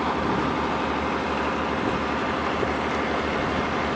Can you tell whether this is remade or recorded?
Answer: recorded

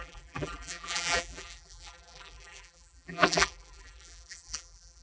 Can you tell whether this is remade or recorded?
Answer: remade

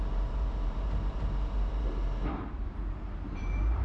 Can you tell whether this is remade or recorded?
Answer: remade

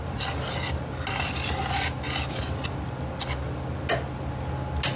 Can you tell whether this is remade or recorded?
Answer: recorded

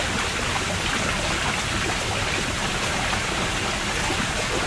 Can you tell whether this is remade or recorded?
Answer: recorded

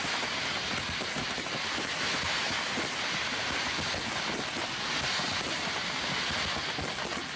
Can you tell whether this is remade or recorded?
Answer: recorded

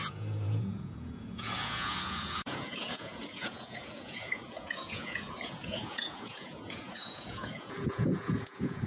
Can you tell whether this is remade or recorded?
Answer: remade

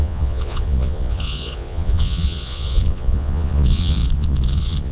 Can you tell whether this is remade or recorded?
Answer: remade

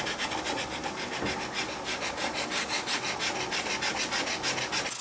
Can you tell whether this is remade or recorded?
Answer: recorded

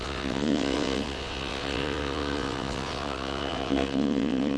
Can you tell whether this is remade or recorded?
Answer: remade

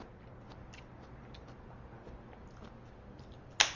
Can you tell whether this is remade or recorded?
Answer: recorded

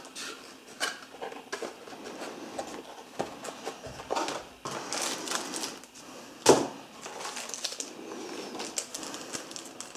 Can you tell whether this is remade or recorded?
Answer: recorded